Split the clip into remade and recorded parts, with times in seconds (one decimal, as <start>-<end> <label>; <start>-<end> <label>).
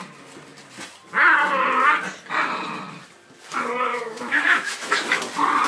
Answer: 0.0-3.9 recorded; 3.9-5.2 remade; 5.2-5.7 recorded